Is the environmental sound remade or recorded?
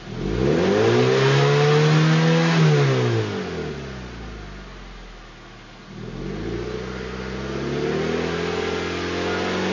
recorded